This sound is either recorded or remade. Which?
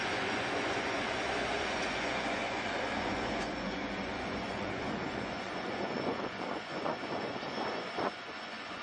remade